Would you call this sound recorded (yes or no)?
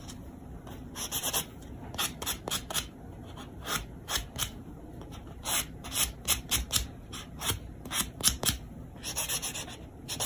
no